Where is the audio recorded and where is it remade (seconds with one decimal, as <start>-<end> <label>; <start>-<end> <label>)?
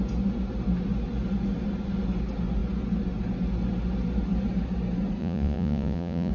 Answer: 0.0-5.2 recorded; 5.2-6.3 remade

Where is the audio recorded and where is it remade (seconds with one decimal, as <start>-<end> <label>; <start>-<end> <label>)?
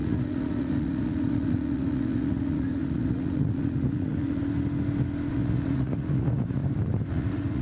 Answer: 0.0-4.4 remade; 4.4-5.3 recorded; 5.3-6.6 remade; 6.6-7.1 recorded; 7.1-7.6 remade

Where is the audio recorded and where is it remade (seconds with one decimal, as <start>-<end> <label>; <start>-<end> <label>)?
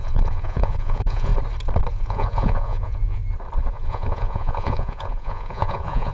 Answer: 0.0-1.3 remade; 1.3-1.9 recorded; 1.9-3.2 remade; 3.2-3.7 recorded; 3.7-6.1 remade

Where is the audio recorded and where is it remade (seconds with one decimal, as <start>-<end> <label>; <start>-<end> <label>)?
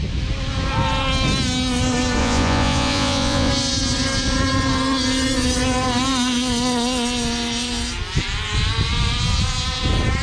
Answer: 0.0-2.2 recorded; 2.2-3.5 remade; 3.5-10.2 recorded